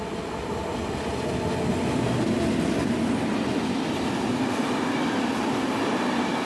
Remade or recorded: recorded